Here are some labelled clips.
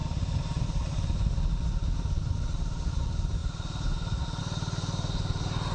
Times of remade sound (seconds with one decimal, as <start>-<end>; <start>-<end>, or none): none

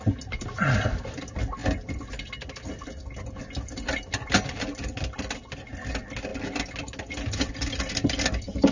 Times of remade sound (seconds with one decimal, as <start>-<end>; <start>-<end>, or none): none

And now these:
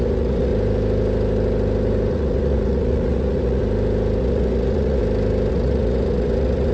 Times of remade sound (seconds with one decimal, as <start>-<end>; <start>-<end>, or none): 0.0-0.5; 2.1-3.6; 4.2-5.0; 5.5-6.7

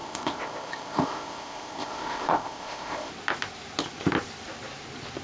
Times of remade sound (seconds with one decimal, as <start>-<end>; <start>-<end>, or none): 0.0-3.1